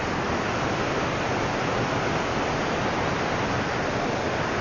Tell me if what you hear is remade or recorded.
recorded